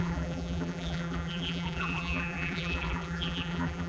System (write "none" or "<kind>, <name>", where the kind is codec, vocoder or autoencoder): vocoder, BigVGAN v2